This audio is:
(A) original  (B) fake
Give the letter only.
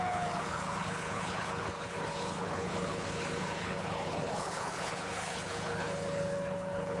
B